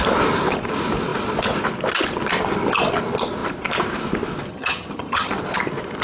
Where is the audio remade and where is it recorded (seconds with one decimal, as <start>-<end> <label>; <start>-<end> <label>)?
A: 0.0-4.5 recorded; 4.5-5.3 remade; 5.3-6.0 recorded